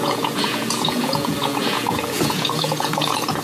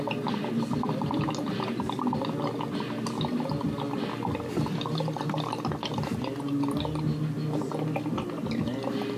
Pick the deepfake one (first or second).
first